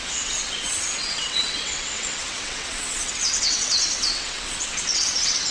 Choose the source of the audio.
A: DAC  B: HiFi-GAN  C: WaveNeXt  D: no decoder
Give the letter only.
C